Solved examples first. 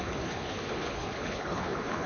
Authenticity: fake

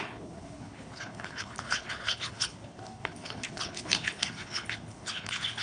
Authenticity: fake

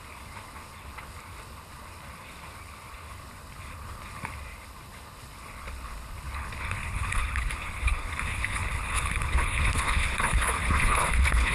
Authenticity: fake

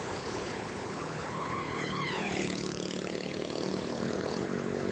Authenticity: fake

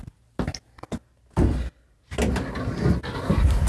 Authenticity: real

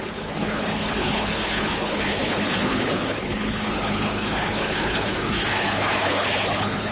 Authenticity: fake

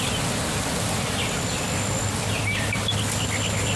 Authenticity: real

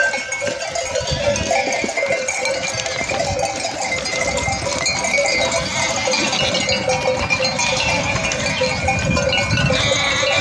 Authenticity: real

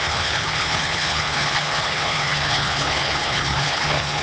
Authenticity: fake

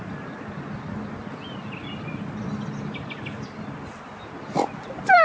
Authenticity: real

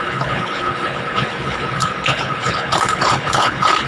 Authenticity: fake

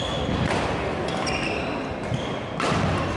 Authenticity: real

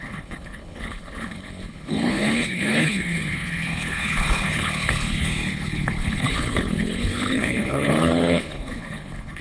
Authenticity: fake